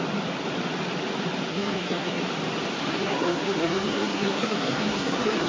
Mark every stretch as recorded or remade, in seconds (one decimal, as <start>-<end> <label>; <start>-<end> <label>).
0.0-1.5 recorded; 1.5-2.2 remade; 2.2-2.9 recorded; 2.9-5.5 remade